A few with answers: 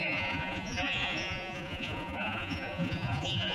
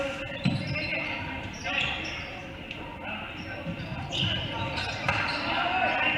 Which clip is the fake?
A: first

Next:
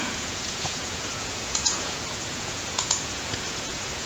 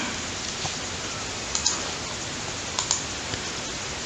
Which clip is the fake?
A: first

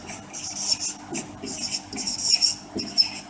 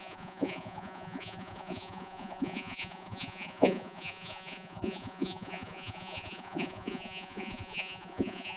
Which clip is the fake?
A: second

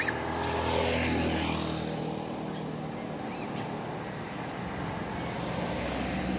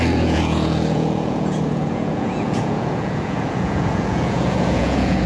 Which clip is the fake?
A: second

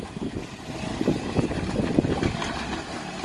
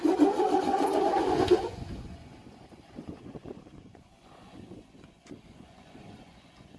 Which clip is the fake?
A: second